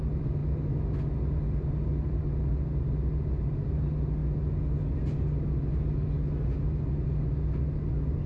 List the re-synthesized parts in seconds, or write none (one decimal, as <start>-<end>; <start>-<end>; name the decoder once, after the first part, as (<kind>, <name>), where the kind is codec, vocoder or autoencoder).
none